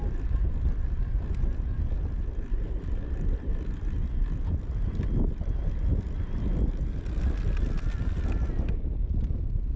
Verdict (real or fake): real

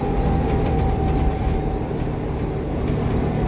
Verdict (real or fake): real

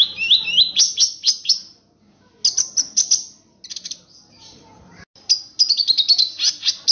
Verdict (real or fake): real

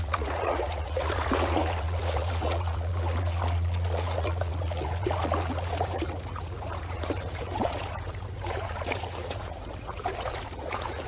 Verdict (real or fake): fake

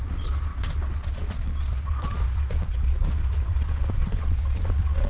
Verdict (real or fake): fake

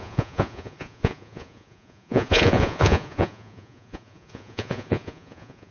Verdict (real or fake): fake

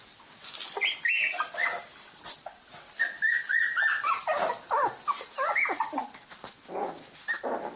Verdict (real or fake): real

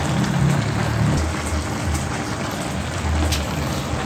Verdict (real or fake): real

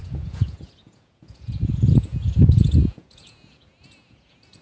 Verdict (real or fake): fake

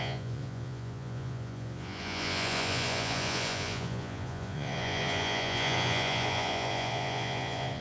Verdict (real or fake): fake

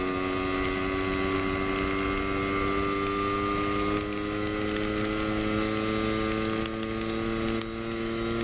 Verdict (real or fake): real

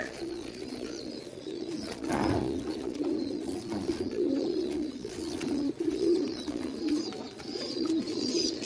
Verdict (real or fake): fake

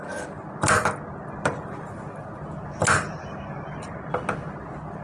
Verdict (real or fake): real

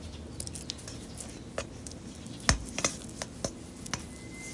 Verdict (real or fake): real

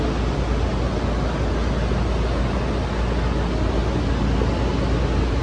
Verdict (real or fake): real